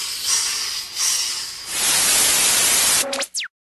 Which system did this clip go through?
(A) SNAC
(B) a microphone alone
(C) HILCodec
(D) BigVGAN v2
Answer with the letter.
B